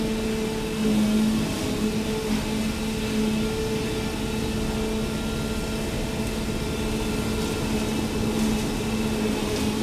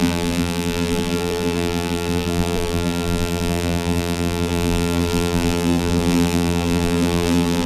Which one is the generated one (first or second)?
second